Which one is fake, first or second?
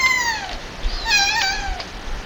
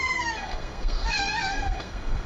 second